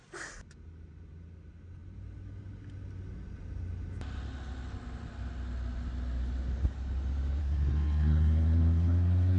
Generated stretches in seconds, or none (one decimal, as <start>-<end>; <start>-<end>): 7.4-9.4